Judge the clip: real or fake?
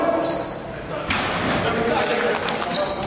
real